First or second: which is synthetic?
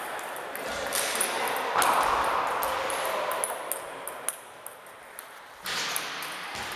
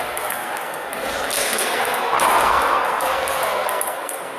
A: second